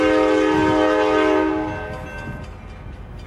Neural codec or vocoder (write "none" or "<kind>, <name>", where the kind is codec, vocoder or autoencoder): none